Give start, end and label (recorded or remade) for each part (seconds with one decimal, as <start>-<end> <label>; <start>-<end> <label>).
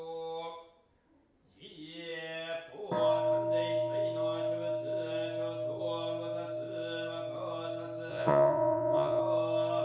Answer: 0.0-8.1 recorded; 8.1-9.2 remade; 9.2-9.8 recorded